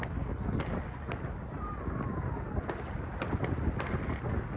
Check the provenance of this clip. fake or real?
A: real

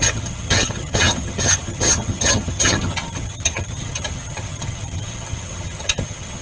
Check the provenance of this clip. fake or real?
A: fake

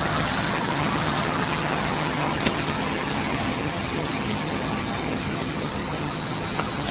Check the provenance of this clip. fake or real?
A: fake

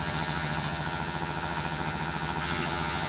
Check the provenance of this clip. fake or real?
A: fake